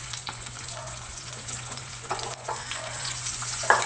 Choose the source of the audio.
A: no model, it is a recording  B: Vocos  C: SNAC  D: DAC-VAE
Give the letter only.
B